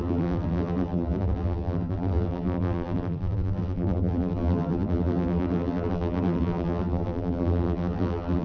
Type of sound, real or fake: fake